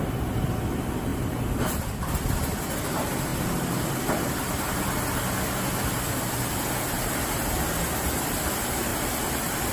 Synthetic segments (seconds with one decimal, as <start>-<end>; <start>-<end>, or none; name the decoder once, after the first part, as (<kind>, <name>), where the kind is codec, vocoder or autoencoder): 1.1-2.6 (vocoder, BigVGAN v2); 3.3-4.3